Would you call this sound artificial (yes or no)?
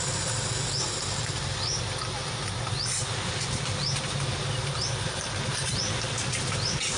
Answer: no